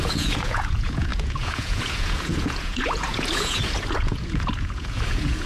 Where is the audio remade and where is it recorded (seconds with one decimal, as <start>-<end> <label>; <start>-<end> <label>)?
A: 0.0-5.5 remade